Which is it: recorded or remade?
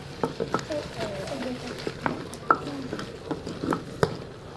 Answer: recorded